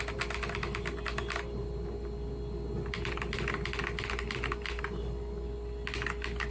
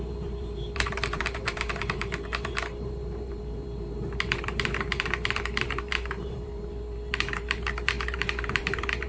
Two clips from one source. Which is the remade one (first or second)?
second